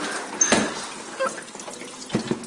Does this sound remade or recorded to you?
recorded